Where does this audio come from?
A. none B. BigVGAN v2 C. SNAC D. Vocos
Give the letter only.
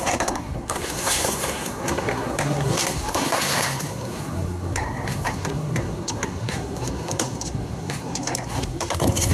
C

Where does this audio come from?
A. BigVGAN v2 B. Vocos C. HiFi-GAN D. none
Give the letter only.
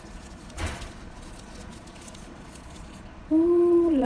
B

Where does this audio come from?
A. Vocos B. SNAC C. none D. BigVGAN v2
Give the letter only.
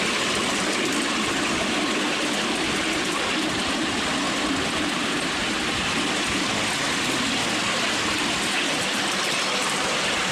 C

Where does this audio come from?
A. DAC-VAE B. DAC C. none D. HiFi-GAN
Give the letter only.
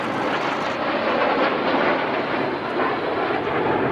C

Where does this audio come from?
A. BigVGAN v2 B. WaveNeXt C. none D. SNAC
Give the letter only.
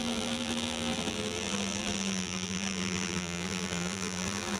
A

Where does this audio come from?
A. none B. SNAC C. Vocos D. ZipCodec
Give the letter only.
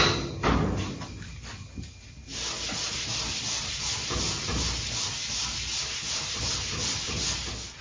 A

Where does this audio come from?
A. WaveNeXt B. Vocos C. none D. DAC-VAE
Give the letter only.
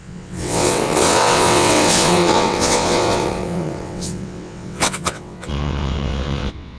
A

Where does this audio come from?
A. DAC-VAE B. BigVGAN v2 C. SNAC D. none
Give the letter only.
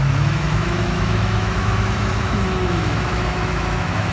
A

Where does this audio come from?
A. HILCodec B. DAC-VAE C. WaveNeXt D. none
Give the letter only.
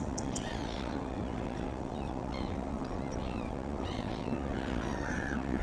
C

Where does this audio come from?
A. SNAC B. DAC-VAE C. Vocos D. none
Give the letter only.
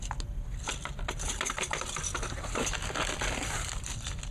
D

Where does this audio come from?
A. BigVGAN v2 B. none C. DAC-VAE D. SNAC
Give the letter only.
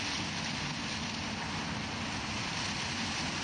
B